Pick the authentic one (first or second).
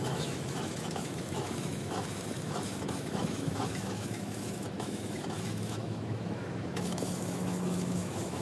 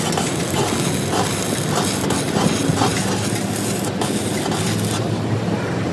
second